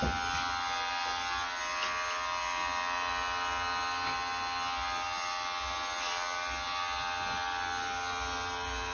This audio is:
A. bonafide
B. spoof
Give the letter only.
A